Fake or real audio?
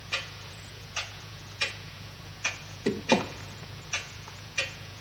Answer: fake